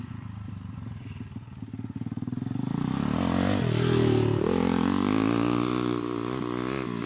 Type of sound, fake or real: real